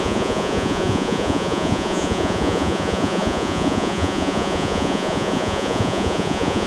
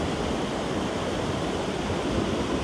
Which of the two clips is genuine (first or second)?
second